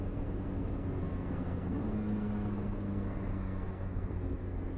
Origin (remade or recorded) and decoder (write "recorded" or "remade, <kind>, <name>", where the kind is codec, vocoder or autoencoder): remade, codec, SNAC